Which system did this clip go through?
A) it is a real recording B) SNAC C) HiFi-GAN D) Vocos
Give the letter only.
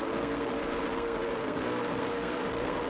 B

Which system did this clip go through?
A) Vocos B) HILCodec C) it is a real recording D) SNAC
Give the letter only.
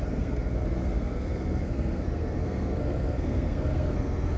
D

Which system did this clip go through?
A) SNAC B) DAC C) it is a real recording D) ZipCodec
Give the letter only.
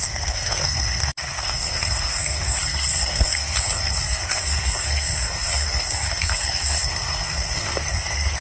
A